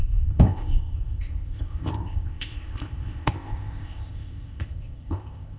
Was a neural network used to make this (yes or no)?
yes